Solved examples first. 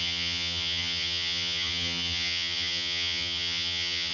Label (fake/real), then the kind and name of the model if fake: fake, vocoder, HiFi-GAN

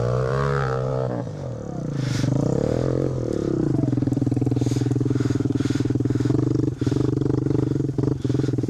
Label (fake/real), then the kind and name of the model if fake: fake, vocoder, BigVGAN v2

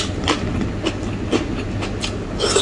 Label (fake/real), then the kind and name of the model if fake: real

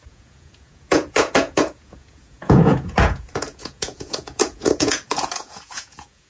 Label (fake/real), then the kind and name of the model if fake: fake, vocoder, Vocos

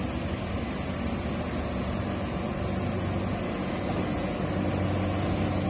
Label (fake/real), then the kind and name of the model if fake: real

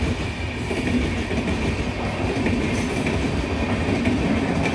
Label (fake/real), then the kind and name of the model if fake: real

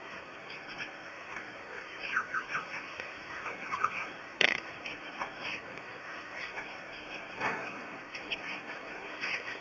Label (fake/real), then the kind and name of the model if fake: fake, codec, SNAC